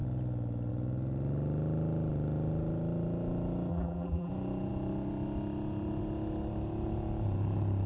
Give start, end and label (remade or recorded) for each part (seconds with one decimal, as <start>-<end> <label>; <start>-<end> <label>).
0.0-3.7 recorded; 3.7-4.3 remade; 4.3-7.9 recorded